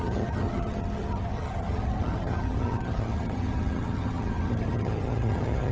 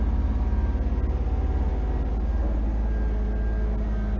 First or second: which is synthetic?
first